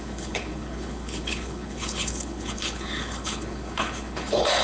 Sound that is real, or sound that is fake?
fake